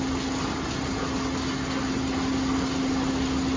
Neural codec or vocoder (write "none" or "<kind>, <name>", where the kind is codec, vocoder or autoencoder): none